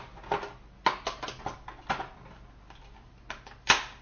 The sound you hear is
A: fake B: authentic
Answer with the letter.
B